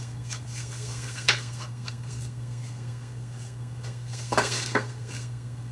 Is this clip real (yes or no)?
no